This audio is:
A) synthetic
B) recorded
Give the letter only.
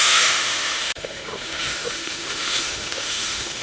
A